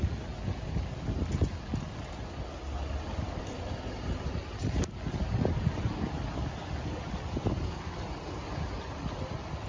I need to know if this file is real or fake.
real